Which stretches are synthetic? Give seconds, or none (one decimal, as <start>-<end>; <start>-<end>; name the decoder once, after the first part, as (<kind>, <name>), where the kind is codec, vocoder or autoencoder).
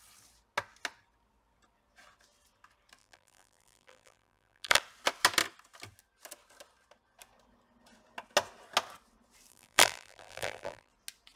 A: 3.0-4.8 (vocoder, BigVGAN v2); 9.5-10.9